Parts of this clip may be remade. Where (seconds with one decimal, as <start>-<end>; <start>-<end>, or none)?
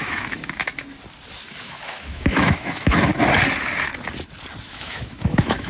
0.0-0.6; 1.6-3.1; 4.6-5.7